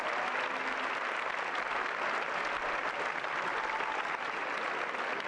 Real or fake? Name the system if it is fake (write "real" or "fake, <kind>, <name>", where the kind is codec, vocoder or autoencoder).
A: real